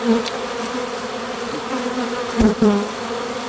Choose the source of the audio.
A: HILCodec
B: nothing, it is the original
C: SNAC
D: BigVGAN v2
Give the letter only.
D